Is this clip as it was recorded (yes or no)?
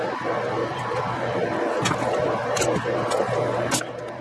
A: yes